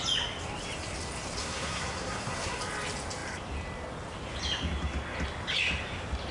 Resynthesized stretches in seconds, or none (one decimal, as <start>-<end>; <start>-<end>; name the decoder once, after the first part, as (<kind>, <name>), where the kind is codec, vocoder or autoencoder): 1.4-2.6 (codec, SNAC)